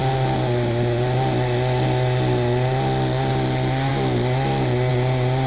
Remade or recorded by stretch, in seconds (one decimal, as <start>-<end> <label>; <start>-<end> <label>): 0.0-5.5 recorded